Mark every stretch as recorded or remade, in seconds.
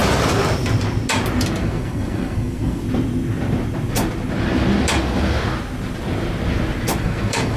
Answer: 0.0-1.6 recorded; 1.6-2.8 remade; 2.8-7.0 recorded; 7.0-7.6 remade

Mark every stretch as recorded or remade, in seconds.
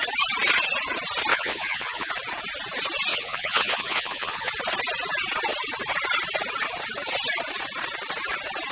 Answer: 0.0-1.3 recorded; 1.3-2.1 remade; 2.1-3.1 recorded; 3.1-4.5 remade; 4.5-8.7 recorded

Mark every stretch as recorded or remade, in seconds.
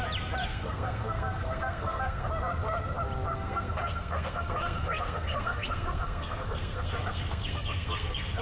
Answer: 0.0-0.4 recorded; 0.4-2.3 remade; 2.3-3.3 recorded; 3.3-8.4 remade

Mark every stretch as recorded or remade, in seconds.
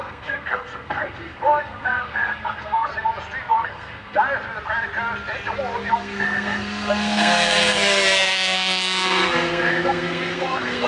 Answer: 0.0-2.9 remade; 2.9-3.5 recorded; 3.5-4.2 remade; 4.2-5.9 recorded; 5.9-10.9 remade